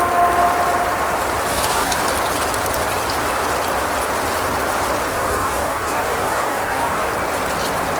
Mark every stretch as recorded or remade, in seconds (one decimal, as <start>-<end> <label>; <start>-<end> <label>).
0.0-1.5 recorded; 1.5-2.0 remade; 2.0-5.1 recorded; 5.1-7.1 remade; 7.1-8.0 recorded